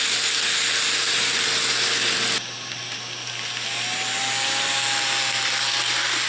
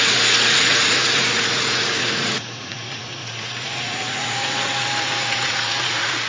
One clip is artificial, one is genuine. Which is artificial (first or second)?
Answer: second